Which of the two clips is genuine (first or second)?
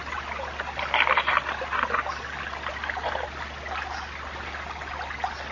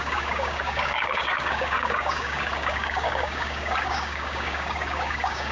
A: first